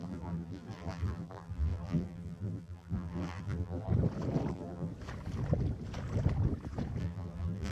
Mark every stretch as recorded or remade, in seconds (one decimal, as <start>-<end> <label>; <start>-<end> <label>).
0.0-3.9 remade; 3.9-4.5 recorded; 4.5-4.9 remade; 4.9-7.0 recorded; 7.0-7.7 remade